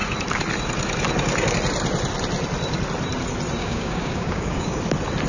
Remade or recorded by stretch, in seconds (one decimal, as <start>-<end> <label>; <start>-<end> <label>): 0.0-3.6 recorded; 3.6-4.8 remade; 4.8-5.3 recorded